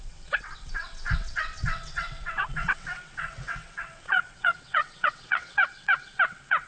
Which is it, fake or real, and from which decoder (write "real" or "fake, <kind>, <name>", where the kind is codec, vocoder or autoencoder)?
fake, vocoder, WaveNeXt